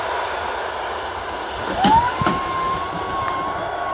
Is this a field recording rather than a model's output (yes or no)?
yes